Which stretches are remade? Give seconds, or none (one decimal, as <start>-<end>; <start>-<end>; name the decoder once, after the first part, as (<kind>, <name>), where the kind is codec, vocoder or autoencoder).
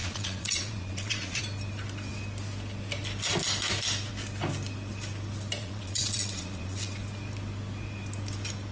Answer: 0.0-1.4 (vocoder, Vocos); 5.6-7.0